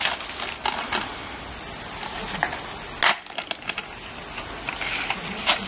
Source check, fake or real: real